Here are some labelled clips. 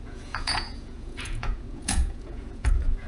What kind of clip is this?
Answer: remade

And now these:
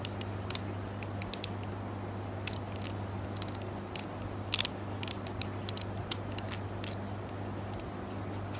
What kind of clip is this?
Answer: recorded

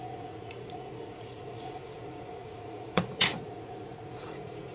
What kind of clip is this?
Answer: remade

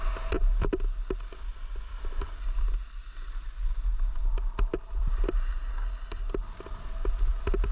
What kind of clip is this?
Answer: recorded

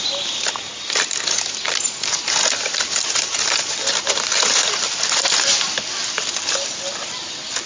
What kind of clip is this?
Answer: recorded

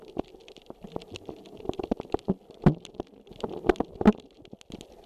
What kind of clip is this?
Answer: recorded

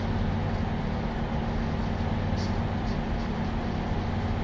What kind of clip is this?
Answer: recorded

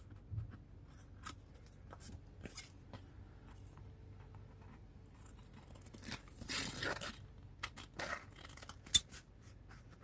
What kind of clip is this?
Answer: recorded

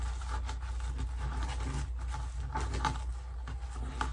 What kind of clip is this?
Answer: recorded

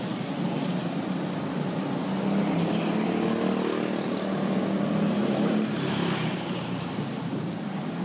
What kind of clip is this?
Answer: recorded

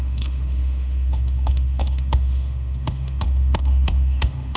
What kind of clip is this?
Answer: remade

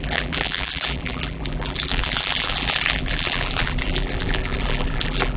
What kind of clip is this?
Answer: remade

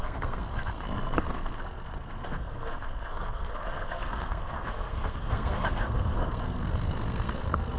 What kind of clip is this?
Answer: remade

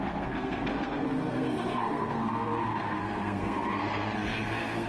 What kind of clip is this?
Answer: remade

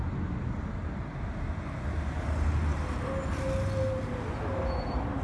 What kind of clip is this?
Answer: recorded